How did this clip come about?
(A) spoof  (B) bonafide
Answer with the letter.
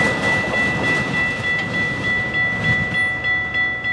B